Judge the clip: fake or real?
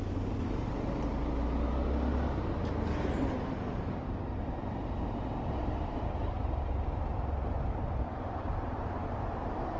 fake